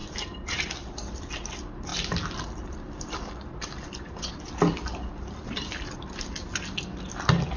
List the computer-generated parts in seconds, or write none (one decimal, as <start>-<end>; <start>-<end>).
0.0-1.3; 1.9-6.0